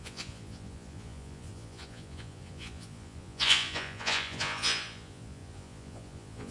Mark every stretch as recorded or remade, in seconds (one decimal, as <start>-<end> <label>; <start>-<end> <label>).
0.0-6.5 remade